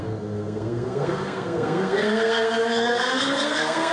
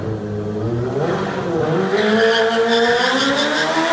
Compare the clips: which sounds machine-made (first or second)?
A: first